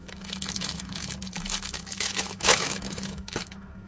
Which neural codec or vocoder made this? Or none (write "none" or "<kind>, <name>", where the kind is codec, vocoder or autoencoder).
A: autoencoder, DAC-VAE